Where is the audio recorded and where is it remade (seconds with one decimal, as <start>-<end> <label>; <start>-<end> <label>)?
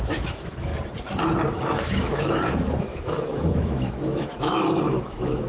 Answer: 0.0-0.7 remade; 0.7-1.7 recorded; 1.7-5.5 remade